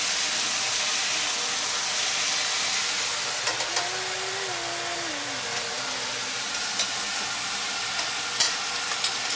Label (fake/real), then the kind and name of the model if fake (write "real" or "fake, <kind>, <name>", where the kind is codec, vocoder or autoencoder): real